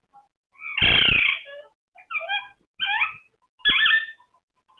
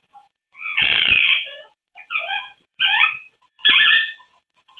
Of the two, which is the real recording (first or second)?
first